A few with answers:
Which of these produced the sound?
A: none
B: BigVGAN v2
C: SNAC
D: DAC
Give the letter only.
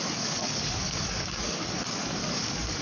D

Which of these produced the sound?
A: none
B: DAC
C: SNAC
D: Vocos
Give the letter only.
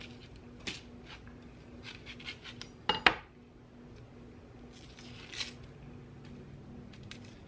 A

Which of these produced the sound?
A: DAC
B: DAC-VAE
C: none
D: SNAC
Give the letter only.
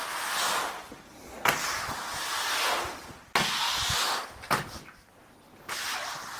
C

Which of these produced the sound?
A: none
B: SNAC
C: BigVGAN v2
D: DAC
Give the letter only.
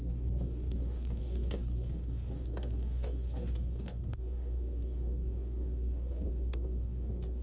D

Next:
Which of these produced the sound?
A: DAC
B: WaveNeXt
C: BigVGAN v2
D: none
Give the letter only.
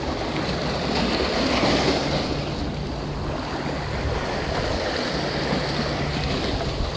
D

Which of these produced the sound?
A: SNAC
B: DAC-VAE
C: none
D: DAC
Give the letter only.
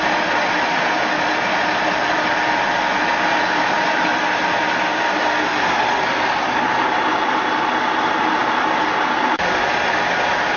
C